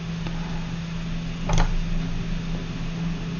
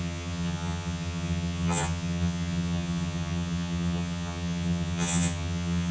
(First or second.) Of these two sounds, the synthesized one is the second